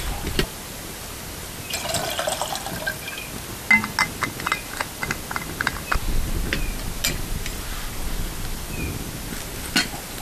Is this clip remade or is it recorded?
recorded